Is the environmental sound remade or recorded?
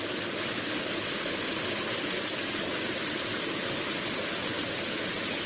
recorded